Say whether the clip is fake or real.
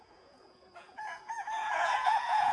fake